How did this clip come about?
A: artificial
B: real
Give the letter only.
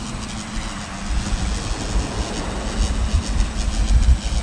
B